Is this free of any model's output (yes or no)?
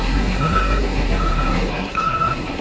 no